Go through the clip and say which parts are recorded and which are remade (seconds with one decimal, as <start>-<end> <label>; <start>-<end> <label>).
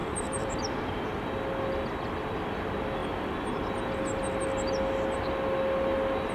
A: 0.0-0.6 remade; 0.6-6.3 recorded